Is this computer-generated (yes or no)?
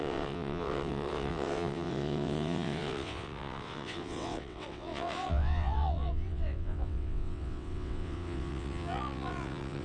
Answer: yes